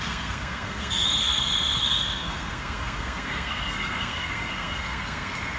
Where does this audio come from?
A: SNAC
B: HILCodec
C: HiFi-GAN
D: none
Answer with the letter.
A